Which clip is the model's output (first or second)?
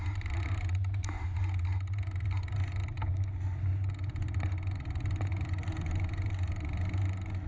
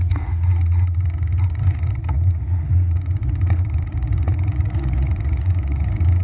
second